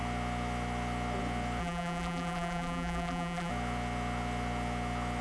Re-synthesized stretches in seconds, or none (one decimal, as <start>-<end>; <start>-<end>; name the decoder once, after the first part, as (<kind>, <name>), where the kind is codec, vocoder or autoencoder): 1.6-3.5 (vocoder, BigVGAN v2)